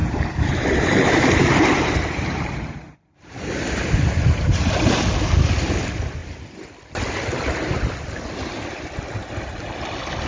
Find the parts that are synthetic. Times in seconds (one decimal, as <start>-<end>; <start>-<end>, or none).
0.0-4.7